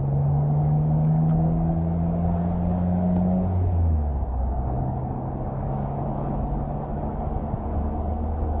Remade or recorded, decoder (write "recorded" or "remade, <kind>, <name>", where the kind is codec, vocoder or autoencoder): remade, codec, DAC